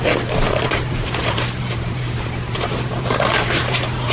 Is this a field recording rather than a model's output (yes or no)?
no